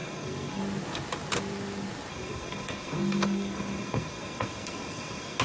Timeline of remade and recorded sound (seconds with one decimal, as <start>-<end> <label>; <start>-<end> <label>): 0.0-0.6 remade; 0.6-2.1 recorded; 2.1-5.4 remade